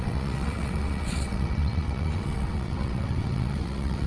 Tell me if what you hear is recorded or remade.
remade